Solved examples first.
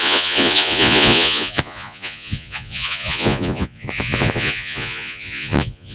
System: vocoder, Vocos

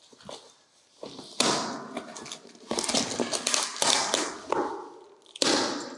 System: none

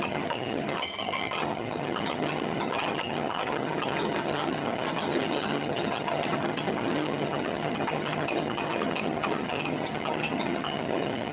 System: vocoder, HiFi-GAN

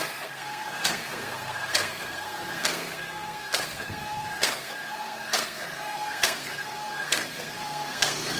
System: codec, SNAC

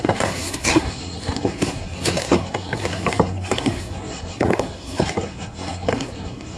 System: codec, SNAC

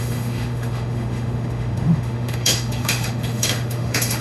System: autoencoder, DAC-VAE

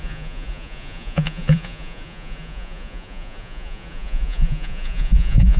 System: vocoder, Vocos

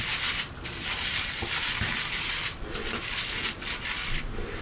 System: vocoder, BigVGAN v2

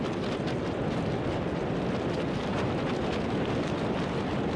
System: none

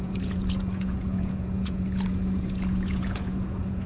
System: vocoder, Vocos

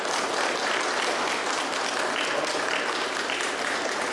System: none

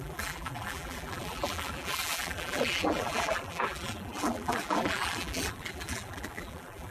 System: vocoder, BigVGAN v2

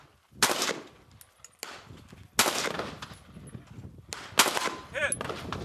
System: none